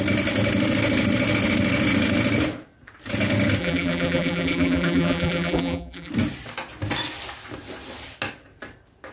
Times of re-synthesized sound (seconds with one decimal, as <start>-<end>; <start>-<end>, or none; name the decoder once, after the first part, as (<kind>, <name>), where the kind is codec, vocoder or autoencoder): 3.6-6.1 (vocoder, BigVGAN v2)